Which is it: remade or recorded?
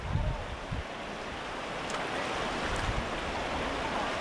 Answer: recorded